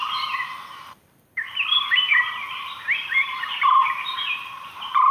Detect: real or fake fake